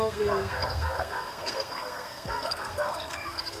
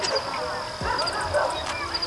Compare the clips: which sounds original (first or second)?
second